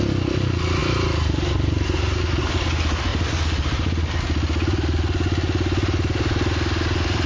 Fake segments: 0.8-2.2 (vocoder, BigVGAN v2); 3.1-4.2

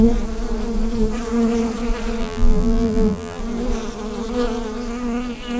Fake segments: 2.2-3.4 (vocoder, BigVGAN v2)

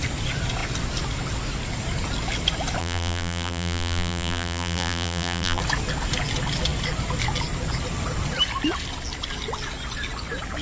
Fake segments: 2.8-5.6 (vocoder, BigVGAN v2)

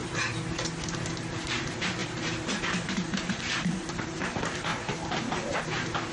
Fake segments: 0.9-4.7 (vocoder, BigVGAN v2); 5.6-6.1

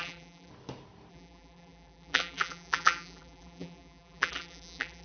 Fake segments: 0.0-0.5 (vocoder, BigVGAN v2); 1.1-5.0